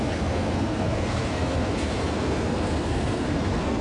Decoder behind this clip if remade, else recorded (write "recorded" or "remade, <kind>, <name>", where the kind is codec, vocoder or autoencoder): remade, codec, SNAC